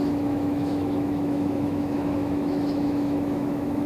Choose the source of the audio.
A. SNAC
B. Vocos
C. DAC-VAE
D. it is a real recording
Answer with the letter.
C